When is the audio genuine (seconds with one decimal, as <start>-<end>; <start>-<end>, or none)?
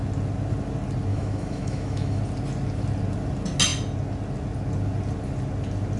0.0-1.1; 2.2-6.0